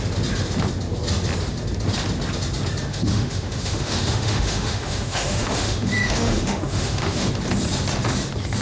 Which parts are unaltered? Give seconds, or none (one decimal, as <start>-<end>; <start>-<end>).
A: 0.0-2.9; 7.3-8.6